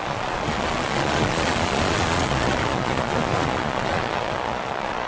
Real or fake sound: fake